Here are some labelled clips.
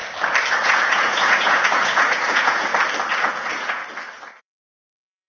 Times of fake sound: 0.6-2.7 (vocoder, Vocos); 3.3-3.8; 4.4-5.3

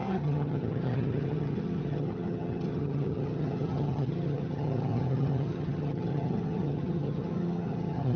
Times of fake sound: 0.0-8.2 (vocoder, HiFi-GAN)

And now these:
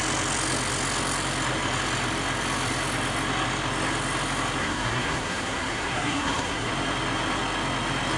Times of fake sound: 4.6-6.7 (codec, SNAC)